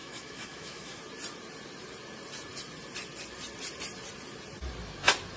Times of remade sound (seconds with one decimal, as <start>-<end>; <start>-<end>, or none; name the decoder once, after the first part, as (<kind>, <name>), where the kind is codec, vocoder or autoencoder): 0.0-1.0 (autoencoder, DAC-VAE)